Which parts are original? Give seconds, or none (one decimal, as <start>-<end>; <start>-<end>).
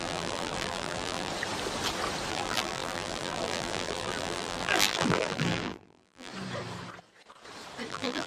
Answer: 1.3-2.3; 6.3-7.9